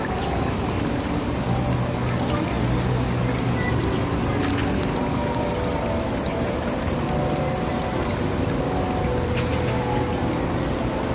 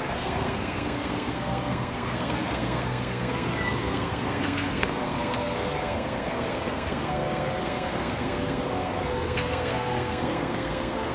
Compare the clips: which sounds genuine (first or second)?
first